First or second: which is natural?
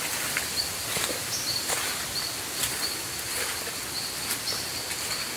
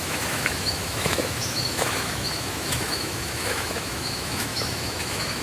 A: first